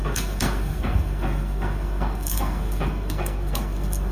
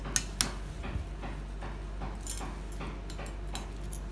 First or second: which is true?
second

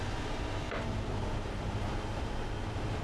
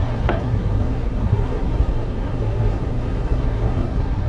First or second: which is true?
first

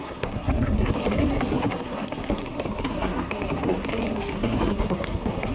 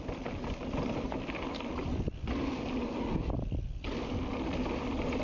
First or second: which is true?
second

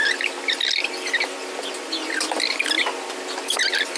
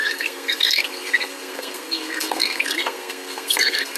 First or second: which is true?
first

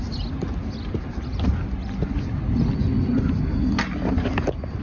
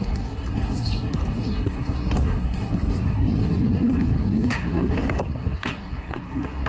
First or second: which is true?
first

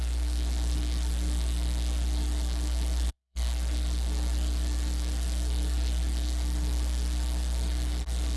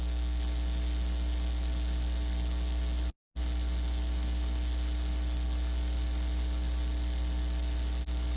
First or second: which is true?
second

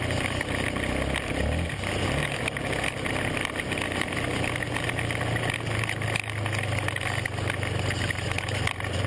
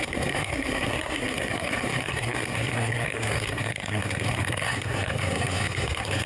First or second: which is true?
first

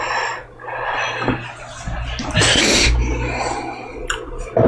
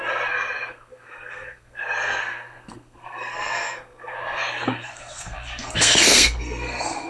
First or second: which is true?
first